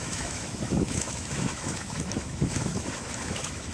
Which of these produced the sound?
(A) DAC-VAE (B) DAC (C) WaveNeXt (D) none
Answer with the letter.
A